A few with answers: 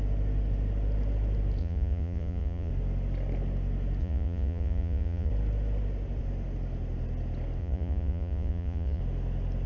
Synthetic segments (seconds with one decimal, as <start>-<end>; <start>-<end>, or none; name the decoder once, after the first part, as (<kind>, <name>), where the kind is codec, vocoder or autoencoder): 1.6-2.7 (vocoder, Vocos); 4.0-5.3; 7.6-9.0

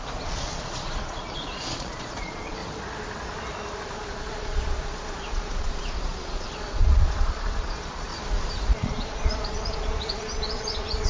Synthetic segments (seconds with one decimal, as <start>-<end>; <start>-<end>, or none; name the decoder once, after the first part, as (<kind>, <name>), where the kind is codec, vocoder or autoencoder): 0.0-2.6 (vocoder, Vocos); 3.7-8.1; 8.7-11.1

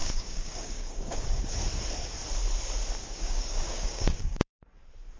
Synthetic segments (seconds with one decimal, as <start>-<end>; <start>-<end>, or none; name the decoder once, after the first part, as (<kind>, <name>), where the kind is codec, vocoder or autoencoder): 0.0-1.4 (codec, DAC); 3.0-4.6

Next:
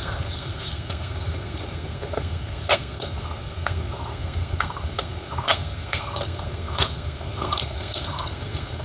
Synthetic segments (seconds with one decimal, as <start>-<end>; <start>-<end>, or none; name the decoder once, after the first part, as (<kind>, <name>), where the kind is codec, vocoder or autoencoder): 0.0-8.8 (codec, SNAC)